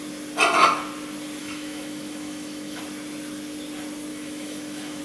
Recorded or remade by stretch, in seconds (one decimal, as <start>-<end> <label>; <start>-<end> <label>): 0.0-1.4 recorded; 1.4-2.8 remade; 2.8-4.1 recorded; 4.1-5.0 remade